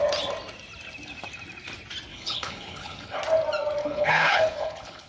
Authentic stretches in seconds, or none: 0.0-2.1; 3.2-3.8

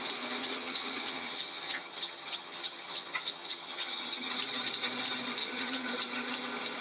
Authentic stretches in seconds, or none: 0.0-0.4; 4.3-5.4; 5.9-6.8

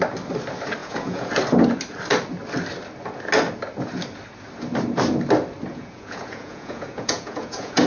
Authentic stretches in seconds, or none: 0.0-0.8; 1.3-5.7

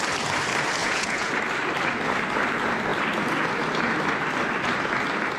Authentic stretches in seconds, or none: 0.0-0.8; 1.3-5.4

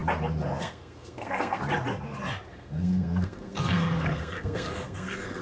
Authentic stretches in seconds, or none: 0.0-0.6; 1.6-2.5

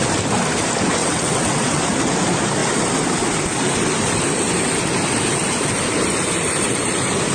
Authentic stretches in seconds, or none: 0.0-1.0; 1.8-7.3